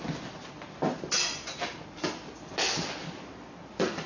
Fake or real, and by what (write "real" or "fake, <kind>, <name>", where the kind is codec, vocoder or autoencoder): real